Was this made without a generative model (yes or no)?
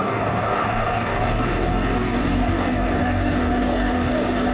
no